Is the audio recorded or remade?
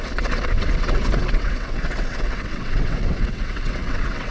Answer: remade